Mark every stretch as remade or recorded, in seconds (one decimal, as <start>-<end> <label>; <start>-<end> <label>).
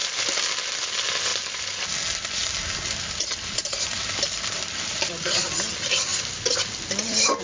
0.0-0.6 remade; 0.6-1.3 recorded; 1.3-1.9 remade; 1.9-2.4 recorded; 2.4-3.3 remade; 3.3-6.1 recorded; 6.1-7.4 remade